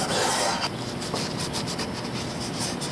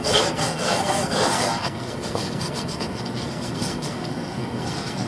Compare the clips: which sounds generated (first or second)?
second